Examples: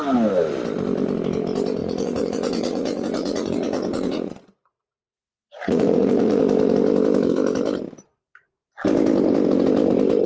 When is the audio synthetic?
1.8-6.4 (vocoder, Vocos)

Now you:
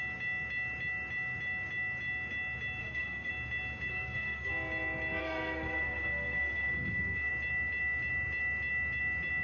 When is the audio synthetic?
2.8-3.3 (codec, SNAC); 3.9-4.5; 5.2-7.3

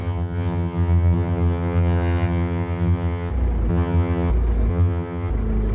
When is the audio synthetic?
0.0-3.3 (vocoder, HiFi-GAN); 3.7-4.3; 4.7-5.3

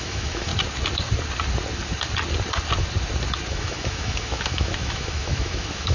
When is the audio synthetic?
0.0-0.5 (autoencoder, DAC-VAE); 3.5-5.9

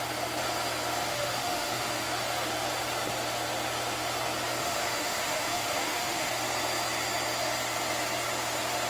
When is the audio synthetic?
1.1-2.0 (autoencoder, DAC-VAE); 4.6-6.3

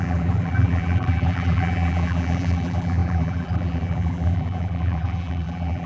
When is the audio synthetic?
0.0-5.9 (vocoder, BigVGAN v2)